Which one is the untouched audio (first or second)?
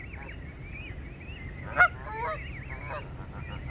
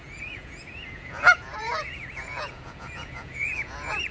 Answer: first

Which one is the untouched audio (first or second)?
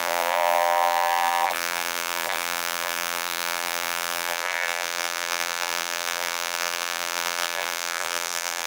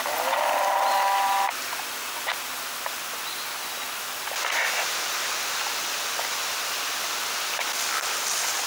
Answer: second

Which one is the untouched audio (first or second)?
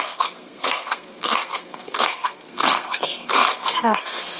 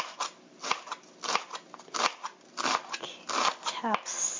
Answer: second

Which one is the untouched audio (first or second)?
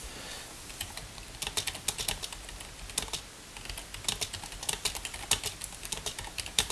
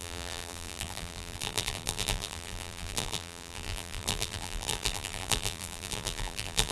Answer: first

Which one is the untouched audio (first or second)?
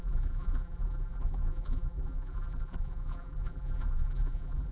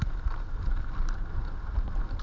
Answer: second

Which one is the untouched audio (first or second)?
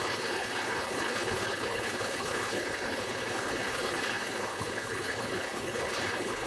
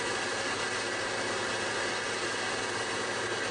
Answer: second